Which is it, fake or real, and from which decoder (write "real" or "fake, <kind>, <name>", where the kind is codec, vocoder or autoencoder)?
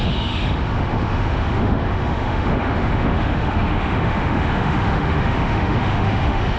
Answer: fake, autoencoder, DAC-VAE